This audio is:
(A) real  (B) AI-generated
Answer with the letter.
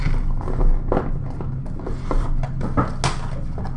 A